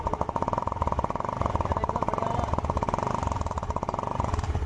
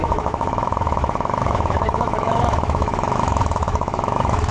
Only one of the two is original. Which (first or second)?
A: first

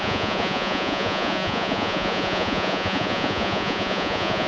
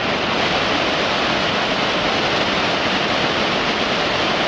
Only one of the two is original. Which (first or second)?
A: second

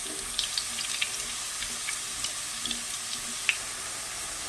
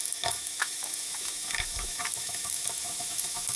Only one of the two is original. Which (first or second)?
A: first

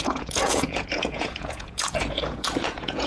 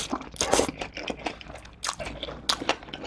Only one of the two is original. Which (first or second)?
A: second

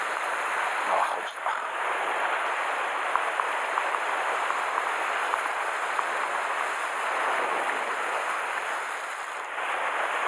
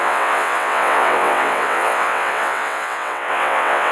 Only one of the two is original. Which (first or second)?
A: first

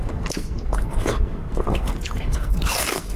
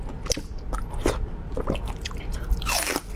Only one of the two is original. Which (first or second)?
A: second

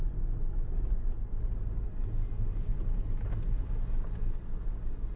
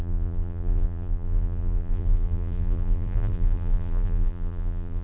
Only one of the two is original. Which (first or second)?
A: first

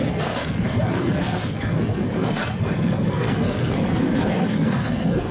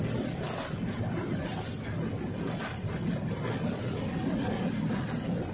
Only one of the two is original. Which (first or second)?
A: second